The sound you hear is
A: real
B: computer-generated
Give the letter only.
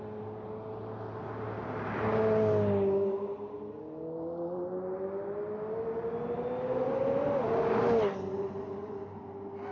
A